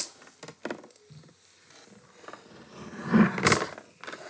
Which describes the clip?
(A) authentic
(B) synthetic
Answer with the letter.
A